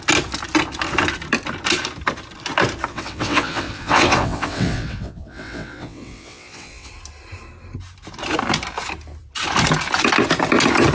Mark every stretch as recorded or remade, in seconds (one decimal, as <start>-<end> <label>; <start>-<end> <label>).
0.0-2.9 recorded; 2.9-6.9 remade; 6.9-10.9 recorded